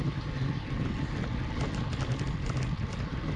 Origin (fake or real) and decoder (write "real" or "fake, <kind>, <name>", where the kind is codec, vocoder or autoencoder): real